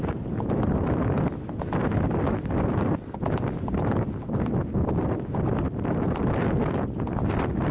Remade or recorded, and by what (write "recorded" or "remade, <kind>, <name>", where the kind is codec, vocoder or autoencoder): recorded